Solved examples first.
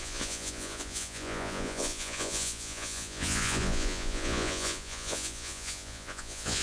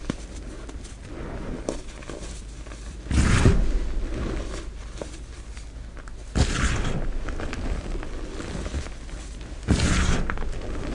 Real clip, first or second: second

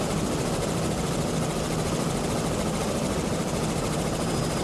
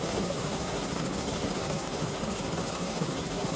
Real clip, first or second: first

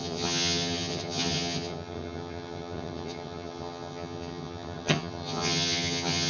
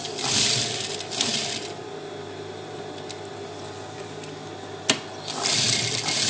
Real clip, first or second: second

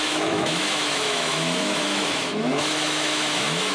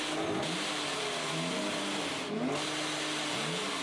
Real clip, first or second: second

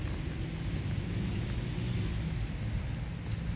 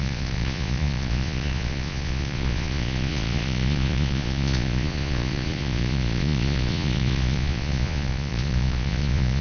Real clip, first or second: first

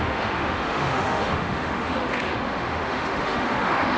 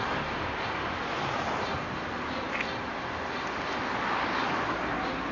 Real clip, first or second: second